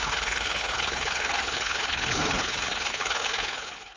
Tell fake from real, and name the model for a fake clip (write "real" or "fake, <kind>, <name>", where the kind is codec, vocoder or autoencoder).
fake, codec, HILCodec